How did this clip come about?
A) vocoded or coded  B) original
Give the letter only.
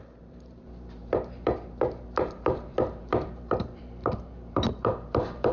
A